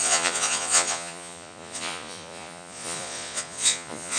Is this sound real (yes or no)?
no